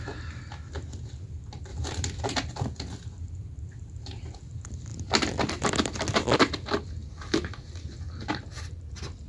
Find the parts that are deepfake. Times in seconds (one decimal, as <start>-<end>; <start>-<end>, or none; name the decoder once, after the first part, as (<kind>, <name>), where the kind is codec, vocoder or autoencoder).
none